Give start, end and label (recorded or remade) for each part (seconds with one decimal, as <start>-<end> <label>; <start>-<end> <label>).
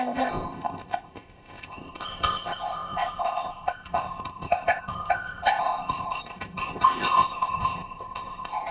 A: 0.0-8.7 remade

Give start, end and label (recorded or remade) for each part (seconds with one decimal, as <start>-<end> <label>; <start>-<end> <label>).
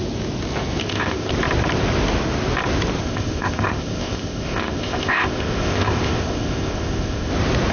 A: 0.0-0.8 recorded; 0.8-1.3 remade; 1.3-3.0 recorded; 3.0-7.3 remade; 7.3-7.7 recorded